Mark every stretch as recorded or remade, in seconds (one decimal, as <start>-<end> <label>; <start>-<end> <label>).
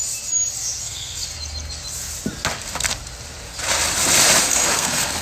0.0-0.8 recorded; 0.8-1.3 remade; 1.3-4.4 recorded; 4.4-5.2 remade